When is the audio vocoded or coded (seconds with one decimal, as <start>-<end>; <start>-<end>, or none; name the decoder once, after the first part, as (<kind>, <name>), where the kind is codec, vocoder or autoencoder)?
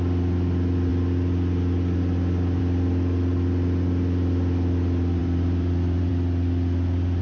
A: 5.2-6.1 (vocoder, BigVGAN v2)